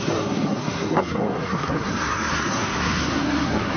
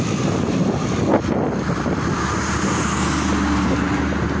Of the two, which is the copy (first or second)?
first